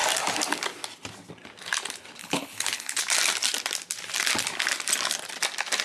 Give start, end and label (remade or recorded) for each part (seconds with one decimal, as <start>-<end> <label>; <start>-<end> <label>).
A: 0.0-2.2 recorded; 2.2-3.0 remade; 3.0-5.8 recorded